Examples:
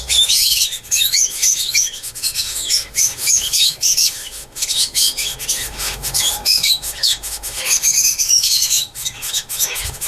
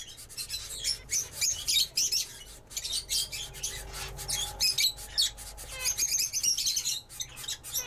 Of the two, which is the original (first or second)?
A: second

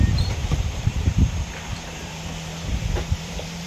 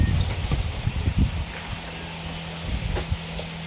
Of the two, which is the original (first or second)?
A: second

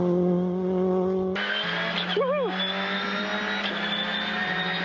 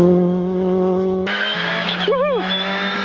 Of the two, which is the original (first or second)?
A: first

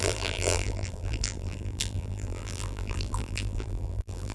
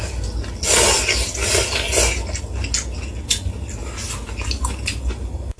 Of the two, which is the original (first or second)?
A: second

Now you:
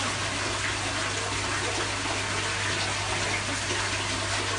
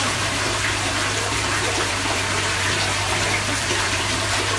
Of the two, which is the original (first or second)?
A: first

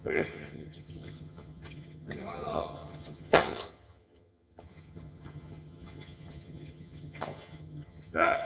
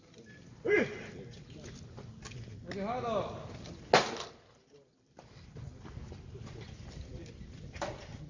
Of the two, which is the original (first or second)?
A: second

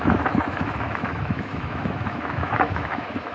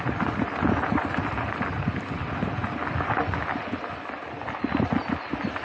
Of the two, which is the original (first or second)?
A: second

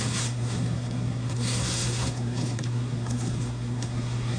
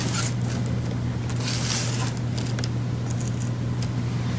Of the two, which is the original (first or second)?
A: second